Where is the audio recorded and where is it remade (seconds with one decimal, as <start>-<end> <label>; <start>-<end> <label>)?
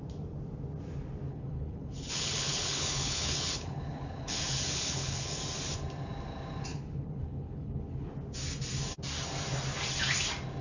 0.0-1.3 recorded; 1.3-5.4 remade; 5.4-6.7 recorded; 6.7-8.1 remade; 8.1-10.6 recorded